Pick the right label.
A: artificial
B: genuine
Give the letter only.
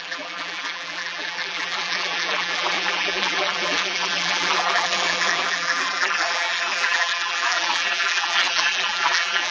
A